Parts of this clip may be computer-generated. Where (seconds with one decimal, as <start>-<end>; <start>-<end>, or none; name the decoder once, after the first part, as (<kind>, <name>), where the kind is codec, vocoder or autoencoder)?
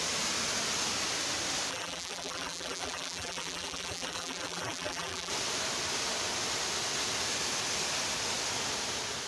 1.7-5.3 (vocoder, BigVGAN v2)